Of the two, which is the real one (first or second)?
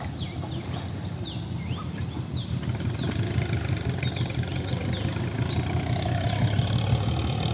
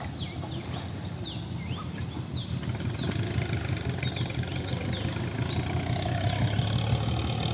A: second